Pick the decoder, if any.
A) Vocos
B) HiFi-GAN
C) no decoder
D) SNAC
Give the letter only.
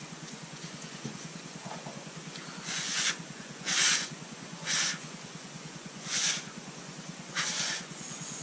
A